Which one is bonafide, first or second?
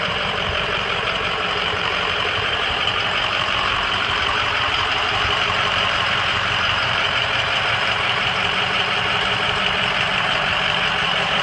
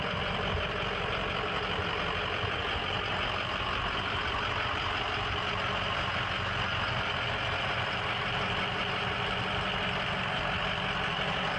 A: second